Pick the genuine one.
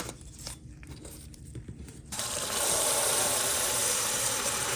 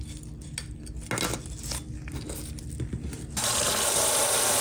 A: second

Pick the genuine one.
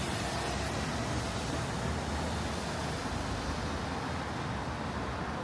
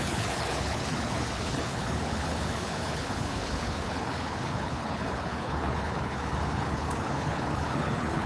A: first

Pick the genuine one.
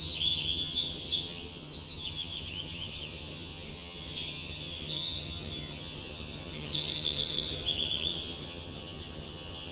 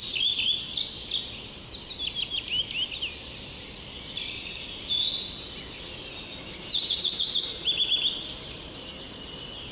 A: second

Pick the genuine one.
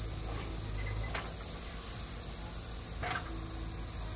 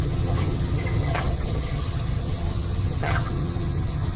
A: first